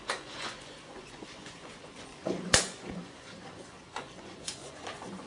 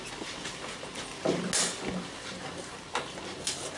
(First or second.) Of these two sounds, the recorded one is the second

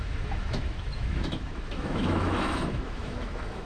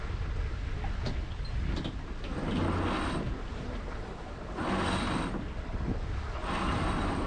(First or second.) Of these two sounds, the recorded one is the second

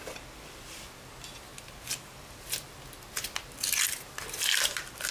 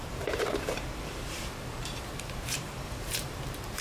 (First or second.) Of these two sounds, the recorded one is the first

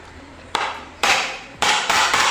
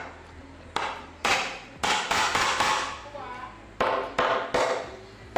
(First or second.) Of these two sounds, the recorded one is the second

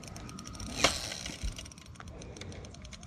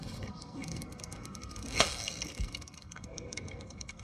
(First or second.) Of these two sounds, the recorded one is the first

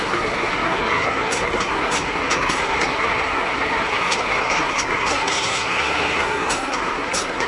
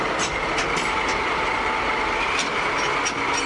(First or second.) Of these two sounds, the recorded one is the second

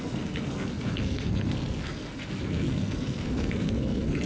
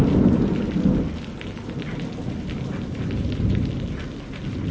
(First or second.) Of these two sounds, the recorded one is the second